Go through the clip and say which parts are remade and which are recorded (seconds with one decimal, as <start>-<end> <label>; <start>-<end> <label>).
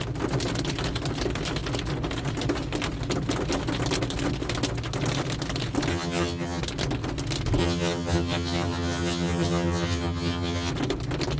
0.0-5.9 recorded; 5.9-6.6 remade; 6.6-7.6 recorded; 7.6-10.7 remade; 10.7-11.4 recorded